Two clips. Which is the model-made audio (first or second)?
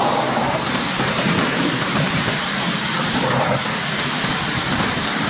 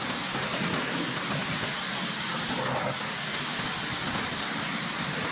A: first